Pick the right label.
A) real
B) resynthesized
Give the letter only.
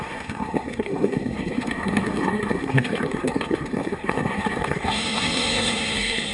B